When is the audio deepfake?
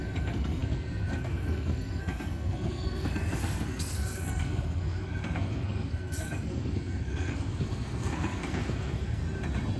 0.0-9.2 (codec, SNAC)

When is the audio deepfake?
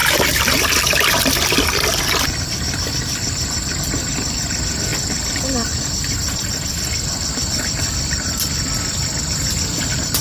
0.0-4.9 (vocoder, BigVGAN v2); 5.5-10.2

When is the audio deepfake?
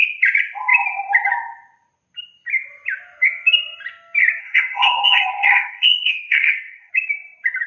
4.4-6.9 (codec, SNAC)